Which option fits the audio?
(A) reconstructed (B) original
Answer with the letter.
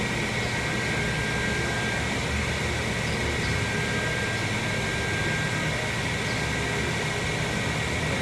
B